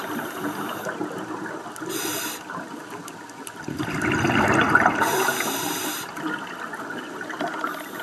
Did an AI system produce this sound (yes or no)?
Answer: no